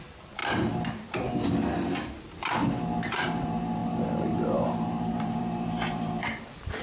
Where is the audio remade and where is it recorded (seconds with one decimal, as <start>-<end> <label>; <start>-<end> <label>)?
0.0-0.4 remade; 0.4-3.0 recorded; 3.0-6.8 remade